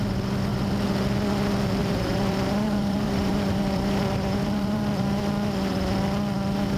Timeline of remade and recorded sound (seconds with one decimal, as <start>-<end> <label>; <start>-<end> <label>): 0.0-1.8 recorded; 1.8-5.2 remade; 5.2-6.8 recorded